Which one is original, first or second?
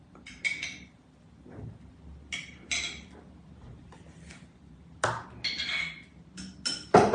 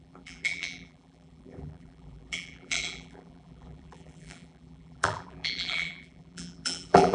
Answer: first